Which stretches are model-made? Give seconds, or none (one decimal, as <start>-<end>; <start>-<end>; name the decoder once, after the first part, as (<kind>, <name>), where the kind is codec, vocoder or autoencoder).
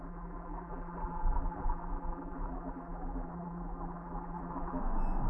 0.0-4.8 (vocoder, BigVGAN v2)